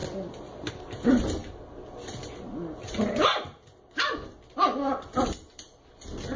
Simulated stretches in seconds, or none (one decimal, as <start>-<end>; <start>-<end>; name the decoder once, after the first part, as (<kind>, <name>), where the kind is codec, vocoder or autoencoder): none